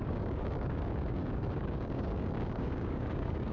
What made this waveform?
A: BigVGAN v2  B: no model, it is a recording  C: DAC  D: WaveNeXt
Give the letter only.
C